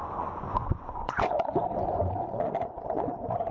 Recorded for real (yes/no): no